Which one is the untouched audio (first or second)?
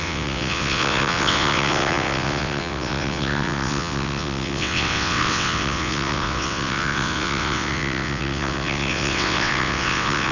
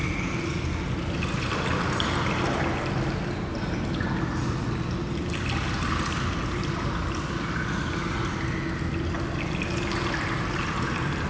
second